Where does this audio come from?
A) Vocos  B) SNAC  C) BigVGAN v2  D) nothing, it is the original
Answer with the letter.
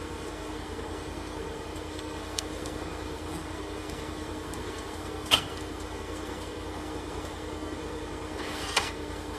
B